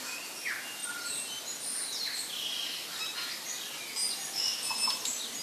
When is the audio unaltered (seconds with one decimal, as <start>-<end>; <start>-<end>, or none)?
0.0-5.4